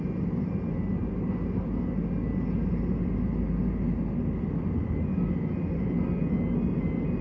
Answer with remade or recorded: recorded